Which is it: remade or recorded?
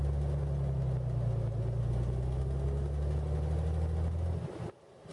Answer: recorded